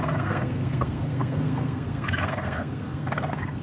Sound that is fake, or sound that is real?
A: fake